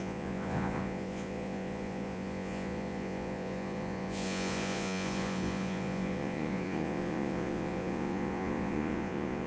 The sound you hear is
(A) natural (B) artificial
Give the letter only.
B